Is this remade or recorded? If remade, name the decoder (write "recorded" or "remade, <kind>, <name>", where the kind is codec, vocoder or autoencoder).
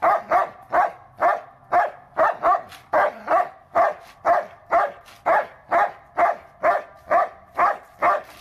recorded